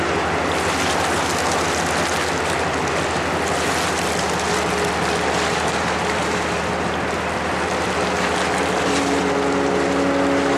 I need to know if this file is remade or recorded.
recorded